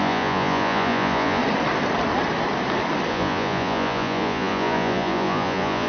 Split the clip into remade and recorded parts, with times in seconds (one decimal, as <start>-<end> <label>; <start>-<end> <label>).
0.0-1.4 remade; 1.4-3.1 recorded; 3.1-5.9 remade